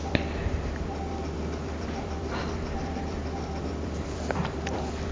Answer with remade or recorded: remade